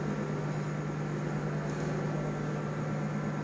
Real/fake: real